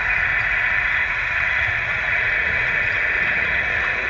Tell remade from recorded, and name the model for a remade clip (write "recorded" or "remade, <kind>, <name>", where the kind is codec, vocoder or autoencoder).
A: remade, vocoder, Vocos